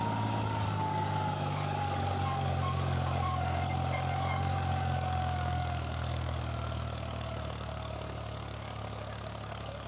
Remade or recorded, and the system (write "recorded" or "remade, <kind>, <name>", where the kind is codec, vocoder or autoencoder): remade, codec, DAC